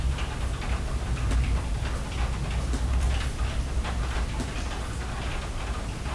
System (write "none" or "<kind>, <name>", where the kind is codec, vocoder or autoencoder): none